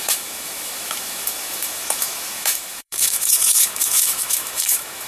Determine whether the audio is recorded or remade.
remade